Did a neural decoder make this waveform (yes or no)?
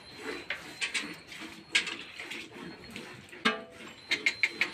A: no